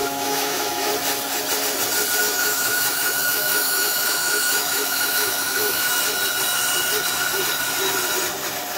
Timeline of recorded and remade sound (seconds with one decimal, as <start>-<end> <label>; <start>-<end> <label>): 0.0-0.9 remade; 0.9-2.2 recorded; 2.2-6.0 remade; 6.0-8.8 recorded